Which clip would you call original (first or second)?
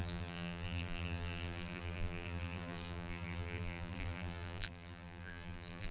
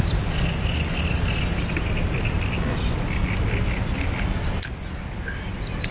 second